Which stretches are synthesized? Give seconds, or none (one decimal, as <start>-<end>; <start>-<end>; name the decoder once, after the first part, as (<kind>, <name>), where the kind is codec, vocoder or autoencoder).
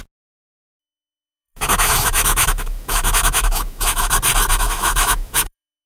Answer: 0.8-4.1 (autoencoder, DAC-VAE); 4.5-5.9